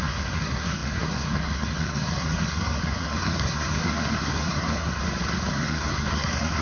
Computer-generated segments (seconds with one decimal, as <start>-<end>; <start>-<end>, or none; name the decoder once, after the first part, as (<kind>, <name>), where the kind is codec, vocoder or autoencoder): 0.0-5.0 (codec, SNAC); 5.5-6.6